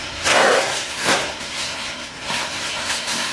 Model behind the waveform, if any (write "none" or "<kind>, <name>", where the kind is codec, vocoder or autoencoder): codec, SNAC